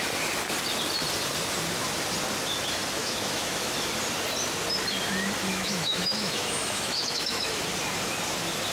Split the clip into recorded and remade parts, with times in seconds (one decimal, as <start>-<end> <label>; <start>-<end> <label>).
0.0-3.0 recorded; 3.0-3.7 remade; 3.7-5.5 recorded; 5.5-7.6 remade; 7.6-8.7 recorded